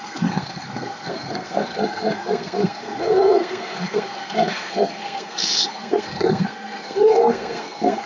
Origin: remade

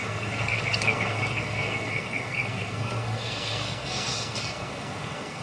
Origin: remade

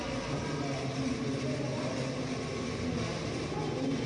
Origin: recorded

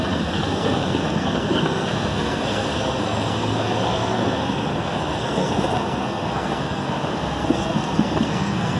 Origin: remade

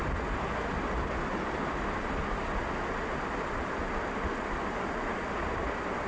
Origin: recorded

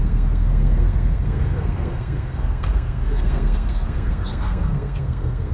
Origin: remade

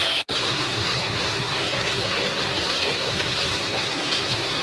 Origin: remade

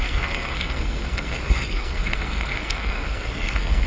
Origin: remade